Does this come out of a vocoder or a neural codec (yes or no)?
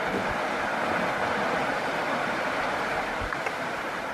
no